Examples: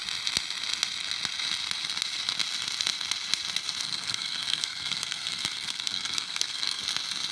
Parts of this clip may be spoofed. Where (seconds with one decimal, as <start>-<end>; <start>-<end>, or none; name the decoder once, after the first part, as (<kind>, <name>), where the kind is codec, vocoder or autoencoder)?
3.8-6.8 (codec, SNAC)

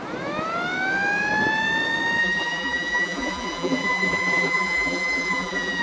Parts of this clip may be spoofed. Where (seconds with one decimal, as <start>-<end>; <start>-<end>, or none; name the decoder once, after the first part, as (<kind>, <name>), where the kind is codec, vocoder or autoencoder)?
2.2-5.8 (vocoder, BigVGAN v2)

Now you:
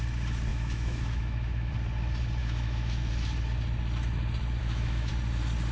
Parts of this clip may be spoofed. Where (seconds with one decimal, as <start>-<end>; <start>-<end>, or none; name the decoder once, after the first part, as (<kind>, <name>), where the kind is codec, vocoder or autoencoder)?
0.5-1.7 (autoencoder, DAC-VAE); 2.4-3.1; 4.6-5.1

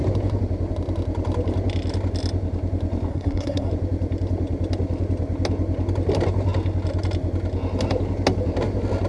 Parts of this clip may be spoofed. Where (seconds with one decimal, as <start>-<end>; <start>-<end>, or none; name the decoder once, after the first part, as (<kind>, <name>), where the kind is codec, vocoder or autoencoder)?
3.1-3.7 (codec, SNAC)

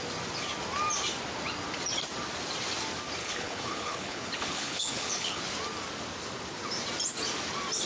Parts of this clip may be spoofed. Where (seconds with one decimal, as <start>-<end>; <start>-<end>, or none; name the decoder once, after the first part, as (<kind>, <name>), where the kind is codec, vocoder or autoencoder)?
3.2-5.4 (codec, HILCodec)